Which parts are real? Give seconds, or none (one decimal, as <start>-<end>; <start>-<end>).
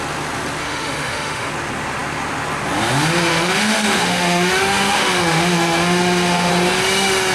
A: 0.0-0.6; 1.5-3.3; 6.5-7.3